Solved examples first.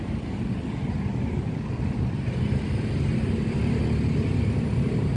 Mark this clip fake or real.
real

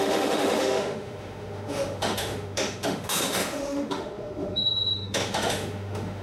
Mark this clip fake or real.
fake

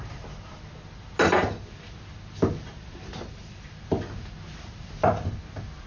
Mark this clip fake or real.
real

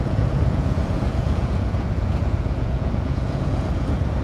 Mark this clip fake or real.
fake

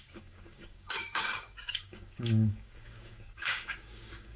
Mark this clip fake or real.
fake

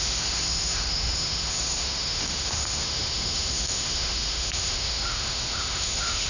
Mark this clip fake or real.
fake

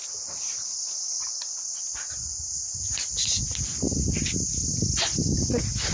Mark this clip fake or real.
real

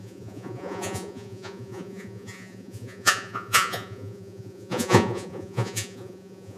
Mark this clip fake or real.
fake